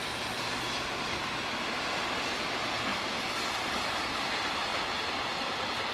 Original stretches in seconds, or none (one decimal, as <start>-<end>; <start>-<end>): 0.0-5.9